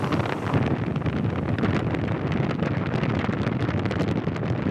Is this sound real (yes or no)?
yes